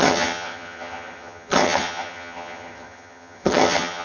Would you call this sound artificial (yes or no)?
yes